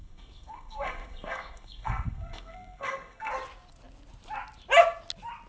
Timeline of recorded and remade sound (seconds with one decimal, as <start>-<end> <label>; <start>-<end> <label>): 0.0-3.3 remade; 3.3-5.5 recorded